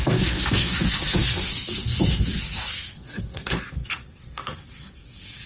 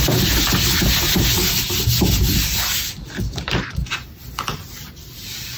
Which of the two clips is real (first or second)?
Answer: second